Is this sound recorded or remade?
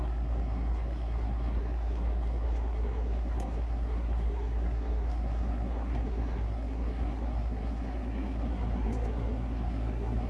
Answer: remade